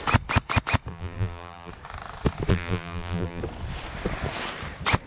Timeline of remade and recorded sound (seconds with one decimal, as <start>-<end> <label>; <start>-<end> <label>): 0.0-0.9 recorded; 0.9-1.7 remade; 1.7-2.5 recorded; 2.5-3.4 remade; 3.4-5.1 recorded